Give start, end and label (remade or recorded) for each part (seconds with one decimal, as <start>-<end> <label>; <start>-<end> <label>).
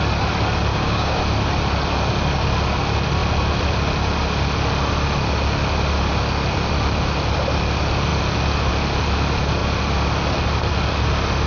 0.0-0.7 recorded; 0.7-1.2 remade; 1.2-11.5 recorded